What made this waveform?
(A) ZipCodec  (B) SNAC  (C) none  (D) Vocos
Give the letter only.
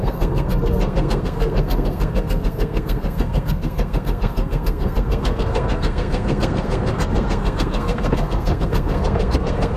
B